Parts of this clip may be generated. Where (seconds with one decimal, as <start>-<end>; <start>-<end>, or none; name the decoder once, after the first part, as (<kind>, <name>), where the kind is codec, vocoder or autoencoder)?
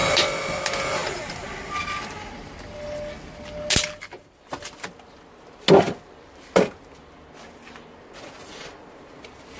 0.0-0.6 (vocoder, BigVGAN v2)